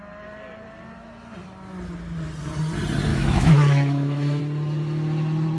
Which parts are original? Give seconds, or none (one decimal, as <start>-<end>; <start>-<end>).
0.0-3.1; 4.4-5.6